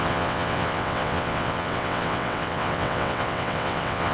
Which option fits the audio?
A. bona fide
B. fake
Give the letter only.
B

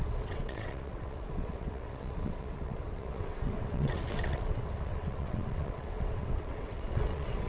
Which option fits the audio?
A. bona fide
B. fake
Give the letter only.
B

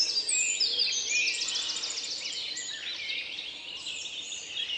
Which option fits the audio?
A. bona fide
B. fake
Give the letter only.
A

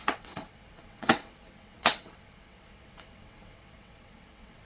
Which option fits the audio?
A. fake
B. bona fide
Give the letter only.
A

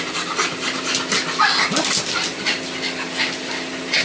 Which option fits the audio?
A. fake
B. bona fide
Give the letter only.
B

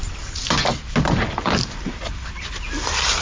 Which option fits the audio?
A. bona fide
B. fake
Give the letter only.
A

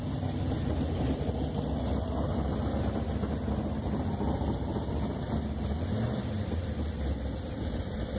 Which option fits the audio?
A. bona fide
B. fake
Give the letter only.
A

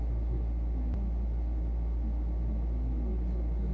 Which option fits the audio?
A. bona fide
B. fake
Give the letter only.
A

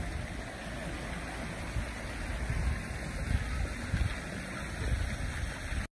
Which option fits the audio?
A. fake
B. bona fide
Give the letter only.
B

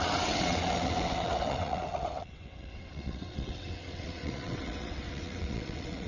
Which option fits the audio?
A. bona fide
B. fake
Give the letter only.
B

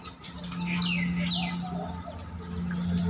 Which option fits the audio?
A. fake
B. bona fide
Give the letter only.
B